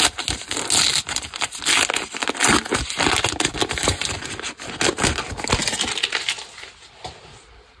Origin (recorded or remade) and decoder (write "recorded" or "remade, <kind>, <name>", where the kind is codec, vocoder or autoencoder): recorded